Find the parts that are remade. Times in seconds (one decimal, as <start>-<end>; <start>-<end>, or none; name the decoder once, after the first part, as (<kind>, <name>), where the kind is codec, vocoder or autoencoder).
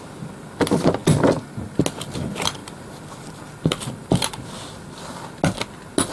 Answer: 2.6-4.2 (vocoder, BigVGAN v2)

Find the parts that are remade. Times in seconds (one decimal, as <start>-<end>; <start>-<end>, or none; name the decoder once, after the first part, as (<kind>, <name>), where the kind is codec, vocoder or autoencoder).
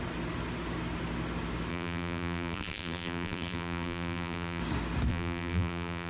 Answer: 1.7-4.6 (vocoder, BigVGAN v2); 5.1-6.1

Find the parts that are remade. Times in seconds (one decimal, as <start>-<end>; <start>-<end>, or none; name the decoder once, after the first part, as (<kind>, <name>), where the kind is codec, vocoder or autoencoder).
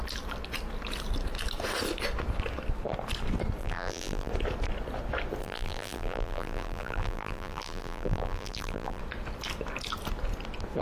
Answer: 3.6-4.3 (vocoder, BigVGAN v2); 5.4-9.0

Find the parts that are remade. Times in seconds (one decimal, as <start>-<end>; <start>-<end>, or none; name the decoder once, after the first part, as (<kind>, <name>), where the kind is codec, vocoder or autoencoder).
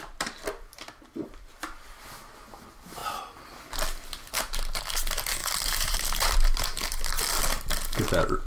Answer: 5.4-7.0 (vocoder, BigVGAN v2)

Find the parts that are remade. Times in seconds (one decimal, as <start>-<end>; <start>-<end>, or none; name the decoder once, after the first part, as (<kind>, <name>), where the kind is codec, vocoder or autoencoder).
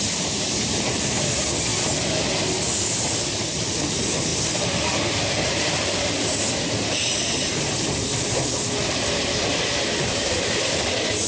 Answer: 0.0-1.7 (vocoder, BigVGAN v2); 3.9-8.0; 9.1-11.3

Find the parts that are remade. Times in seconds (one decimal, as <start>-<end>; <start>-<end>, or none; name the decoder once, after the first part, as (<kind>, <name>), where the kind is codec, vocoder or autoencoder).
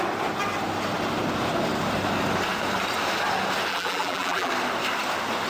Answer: 3.7-4.5 (vocoder, BigVGAN v2)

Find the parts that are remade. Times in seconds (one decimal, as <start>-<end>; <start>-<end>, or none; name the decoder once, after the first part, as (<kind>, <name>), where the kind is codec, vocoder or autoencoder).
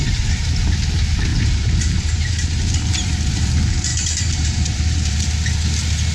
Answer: 1.3-3.5 (vocoder, BigVGAN v2); 3.9-5.3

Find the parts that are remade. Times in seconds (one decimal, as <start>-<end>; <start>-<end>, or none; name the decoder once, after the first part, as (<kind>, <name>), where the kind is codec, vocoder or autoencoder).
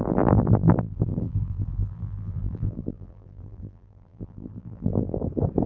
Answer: 0.0-5.2 (vocoder, BigVGAN v2)